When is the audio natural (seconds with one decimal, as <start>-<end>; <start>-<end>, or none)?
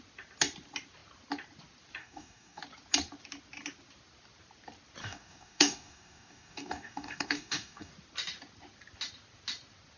0.0-2.0; 2.6-5.0; 7.9-10.0